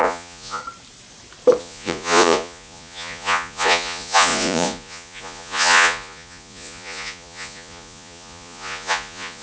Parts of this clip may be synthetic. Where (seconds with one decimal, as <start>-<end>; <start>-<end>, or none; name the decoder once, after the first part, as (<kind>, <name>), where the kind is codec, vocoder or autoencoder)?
0.0-0.6 (vocoder, Vocos); 1.6-9.4